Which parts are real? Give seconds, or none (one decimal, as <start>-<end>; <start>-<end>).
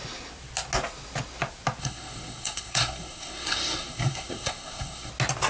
0.0-1.8; 5.1-5.5